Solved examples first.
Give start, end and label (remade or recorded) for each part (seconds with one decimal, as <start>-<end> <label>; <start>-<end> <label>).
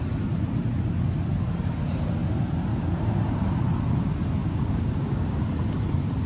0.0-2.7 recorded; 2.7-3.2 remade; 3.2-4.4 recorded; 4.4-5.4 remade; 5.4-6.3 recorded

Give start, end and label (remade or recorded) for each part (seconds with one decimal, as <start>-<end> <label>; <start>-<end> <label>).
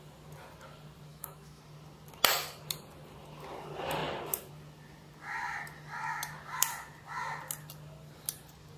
0.0-1.1 recorded; 1.1-1.6 remade; 1.6-8.8 recorded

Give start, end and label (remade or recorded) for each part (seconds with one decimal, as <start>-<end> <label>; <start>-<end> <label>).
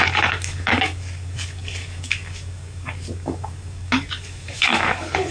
0.0-5.3 remade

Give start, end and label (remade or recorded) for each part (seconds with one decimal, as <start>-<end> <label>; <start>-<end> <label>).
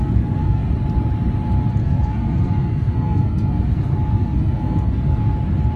0.0-0.7 remade; 0.7-1.8 recorded; 1.8-5.3 remade; 5.3-5.8 recorded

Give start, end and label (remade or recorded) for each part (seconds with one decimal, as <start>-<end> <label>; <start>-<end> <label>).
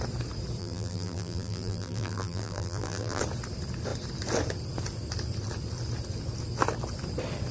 0.0-0.6 recorded; 0.6-3.2 remade; 3.2-7.5 recorded